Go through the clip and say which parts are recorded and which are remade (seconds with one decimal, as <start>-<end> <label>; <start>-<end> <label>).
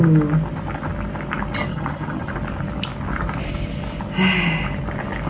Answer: 0.0-1.7 recorded; 1.7-2.3 remade; 2.3-5.3 recorded